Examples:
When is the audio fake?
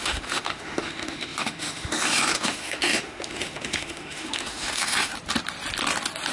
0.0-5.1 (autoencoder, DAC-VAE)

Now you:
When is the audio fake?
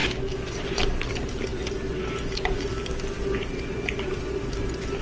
none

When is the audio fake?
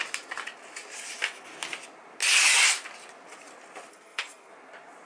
3.9-4.5 (codec, SNAC)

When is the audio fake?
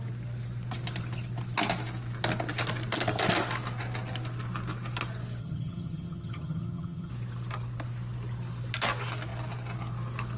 5.4-7.1 (vocoder, HiFi-GAN)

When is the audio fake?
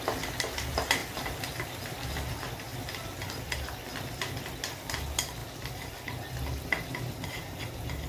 none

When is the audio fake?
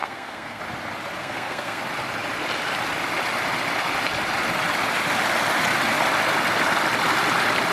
0.0-0.6 (codec, SNAC); 1.2-1.8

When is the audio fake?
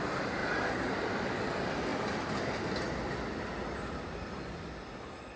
0.0-0.4 (vocoder, BigVGAN v2); 1.1-1.9